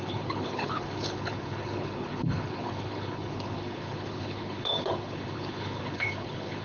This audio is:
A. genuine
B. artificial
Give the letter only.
B